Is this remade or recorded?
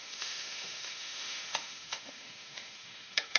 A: remade